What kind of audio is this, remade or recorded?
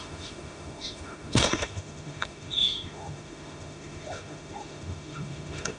remade